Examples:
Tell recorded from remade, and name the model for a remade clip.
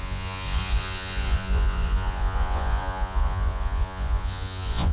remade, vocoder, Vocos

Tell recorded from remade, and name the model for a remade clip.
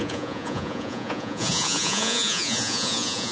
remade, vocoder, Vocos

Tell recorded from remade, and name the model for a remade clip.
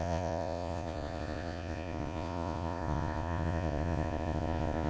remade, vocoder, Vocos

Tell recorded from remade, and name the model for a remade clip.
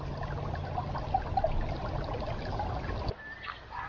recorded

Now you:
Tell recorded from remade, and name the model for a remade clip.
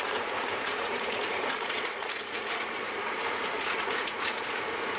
remade, vocoder, Vocos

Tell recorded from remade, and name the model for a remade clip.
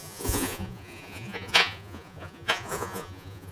remade, vocoder, Vocos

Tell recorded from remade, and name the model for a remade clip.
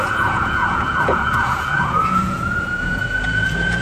remade, vocoder, Vocos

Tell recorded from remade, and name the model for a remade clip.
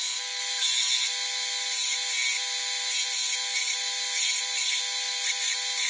recorded